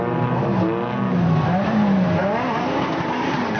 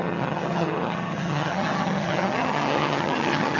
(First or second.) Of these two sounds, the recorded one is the first